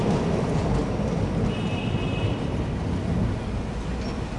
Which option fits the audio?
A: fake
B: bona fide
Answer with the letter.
B